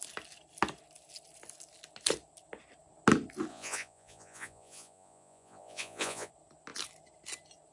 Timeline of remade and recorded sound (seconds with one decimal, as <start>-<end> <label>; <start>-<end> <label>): 0.0-3.5 recorded; 3.5-6.3 remade; 6.3-7.7 recorded